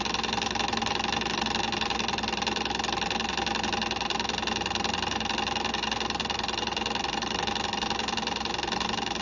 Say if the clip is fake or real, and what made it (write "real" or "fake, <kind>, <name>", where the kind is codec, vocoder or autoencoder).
real